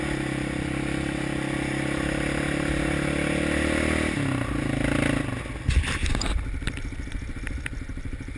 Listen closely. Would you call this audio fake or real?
real